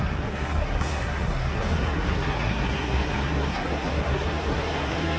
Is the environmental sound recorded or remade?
remade